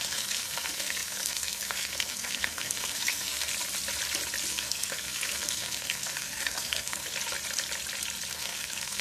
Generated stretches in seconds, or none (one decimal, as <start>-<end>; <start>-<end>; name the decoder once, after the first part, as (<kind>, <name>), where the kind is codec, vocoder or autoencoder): 0.0-3.5 (codec, SNAC); 4.5-7.0; 8.3-9.0